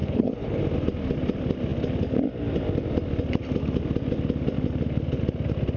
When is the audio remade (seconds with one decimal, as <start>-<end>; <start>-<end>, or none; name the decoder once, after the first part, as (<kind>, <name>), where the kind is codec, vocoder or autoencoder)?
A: 0.0-0.6 (codec, HILCodec)